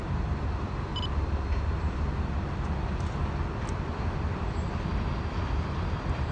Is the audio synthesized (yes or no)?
yes